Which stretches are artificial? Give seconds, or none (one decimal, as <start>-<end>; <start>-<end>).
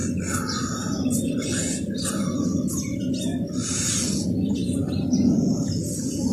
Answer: 0.0-1.3; 3.3-4.0; 4.6-5.8